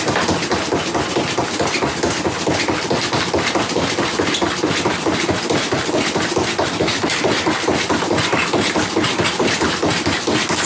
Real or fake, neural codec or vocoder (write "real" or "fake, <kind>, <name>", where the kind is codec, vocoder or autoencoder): real